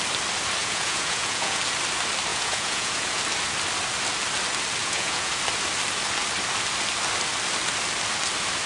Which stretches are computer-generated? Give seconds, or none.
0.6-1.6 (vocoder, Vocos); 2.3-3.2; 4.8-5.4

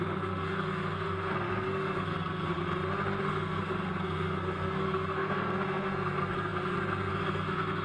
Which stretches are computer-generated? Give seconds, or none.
0.0-2.6 (codec, SNAC); 3.2-7.8